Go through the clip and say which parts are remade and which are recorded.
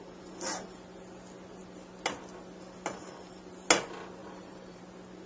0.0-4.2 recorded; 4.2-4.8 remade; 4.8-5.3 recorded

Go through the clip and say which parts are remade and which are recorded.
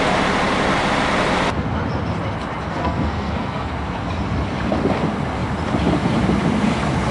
0.0-2.7 recorded; 2.7-3.7 remade; 3.7-7.1 recorded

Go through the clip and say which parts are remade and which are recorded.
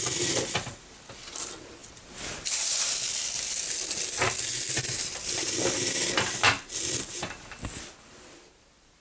0.0-9.0 recorded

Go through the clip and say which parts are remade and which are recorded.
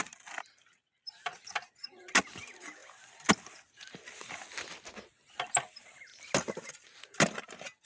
0.0-7.9 recorded